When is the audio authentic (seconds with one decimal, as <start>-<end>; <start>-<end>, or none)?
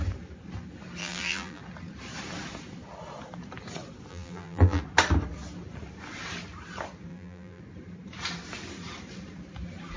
0.0-1.0; 1.6-4.1; 4.8-7.1; 7.6-10.0